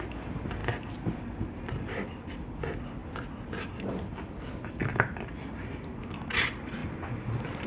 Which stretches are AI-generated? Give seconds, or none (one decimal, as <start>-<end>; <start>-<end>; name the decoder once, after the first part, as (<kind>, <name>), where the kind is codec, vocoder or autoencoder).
none